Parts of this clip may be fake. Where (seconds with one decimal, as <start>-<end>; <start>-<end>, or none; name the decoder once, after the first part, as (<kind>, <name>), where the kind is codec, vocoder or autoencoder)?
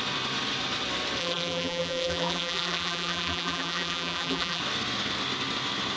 1.2-4.6 (vocoder, BigVGAN v2)